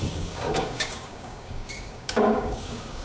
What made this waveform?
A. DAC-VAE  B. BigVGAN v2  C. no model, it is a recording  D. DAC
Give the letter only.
D